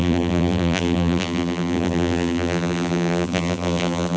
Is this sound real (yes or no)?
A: no